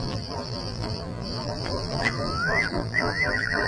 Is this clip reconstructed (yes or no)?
yes